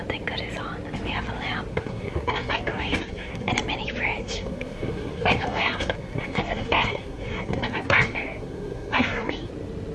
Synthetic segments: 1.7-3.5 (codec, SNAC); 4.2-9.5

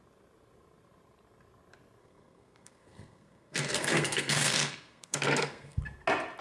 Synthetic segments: 2.0-5.8 (codec, SNAC)

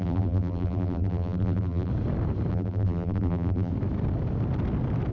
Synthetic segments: 0.0-1.9 (vocoder, BigVGAN v2); 2.5-3.7

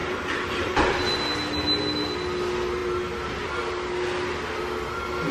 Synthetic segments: 0.0-0.7 (vocoder, BigVGAN v2)

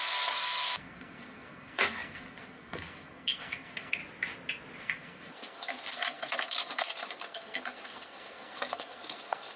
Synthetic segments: 0.0-4.0 (codec, SNAC); 4.8-9.6

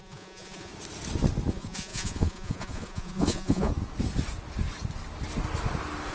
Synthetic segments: 0.0-0.7 (vocoder, Vocos); 1.5-3.7

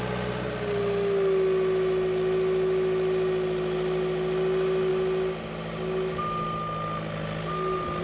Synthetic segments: none